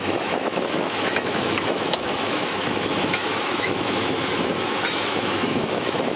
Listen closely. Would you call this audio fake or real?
fake